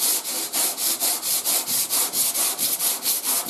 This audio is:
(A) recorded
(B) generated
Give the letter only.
A